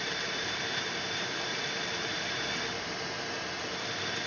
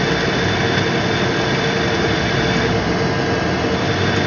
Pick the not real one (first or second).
first